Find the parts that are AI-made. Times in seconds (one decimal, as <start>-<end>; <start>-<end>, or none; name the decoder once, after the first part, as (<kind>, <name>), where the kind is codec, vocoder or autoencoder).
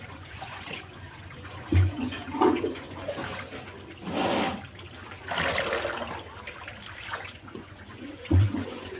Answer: 0.0-3.2 (vocoder, Vocos); 7.1-9.0